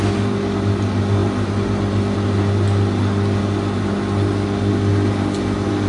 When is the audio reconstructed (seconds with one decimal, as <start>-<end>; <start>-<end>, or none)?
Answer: none